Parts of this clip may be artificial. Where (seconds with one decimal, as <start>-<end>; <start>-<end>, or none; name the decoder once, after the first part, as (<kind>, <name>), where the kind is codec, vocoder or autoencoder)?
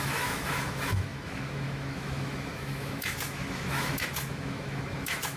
0.0-5.4 (autoencoder, DAC-VAE)